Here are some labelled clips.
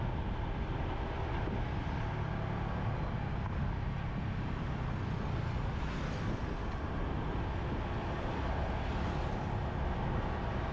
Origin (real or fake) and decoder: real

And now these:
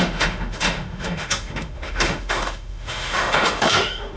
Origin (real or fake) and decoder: fake, autoencoder, DAC-VAE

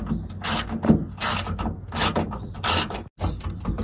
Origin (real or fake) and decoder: real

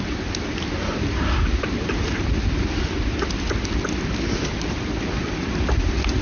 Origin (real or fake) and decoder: real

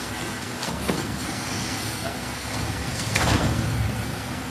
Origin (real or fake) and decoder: fake, codec, SNAC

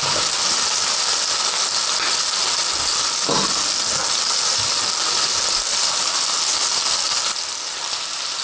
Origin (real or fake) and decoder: real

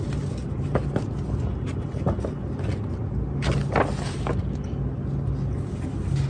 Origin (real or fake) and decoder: real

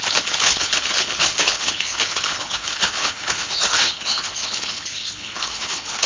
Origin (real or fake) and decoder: fake, codec, HILCodec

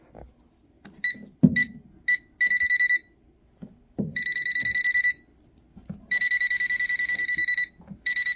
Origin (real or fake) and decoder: real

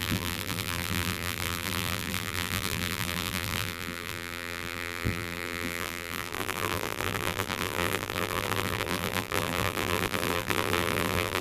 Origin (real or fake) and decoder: fake, vocoder, BigVGAN v2